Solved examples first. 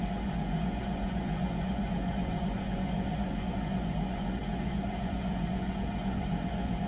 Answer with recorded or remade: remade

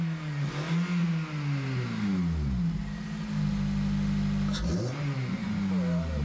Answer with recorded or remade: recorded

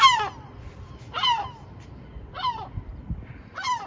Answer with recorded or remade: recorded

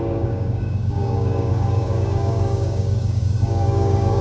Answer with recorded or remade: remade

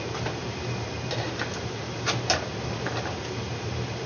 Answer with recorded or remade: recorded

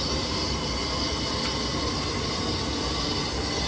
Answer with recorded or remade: recorded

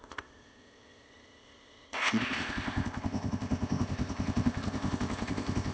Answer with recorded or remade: remade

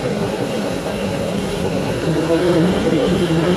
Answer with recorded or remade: remade